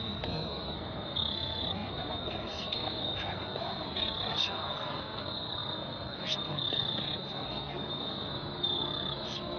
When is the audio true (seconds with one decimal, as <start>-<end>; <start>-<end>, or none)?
none